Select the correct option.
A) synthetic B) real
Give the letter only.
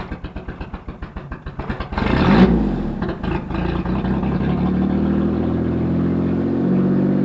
B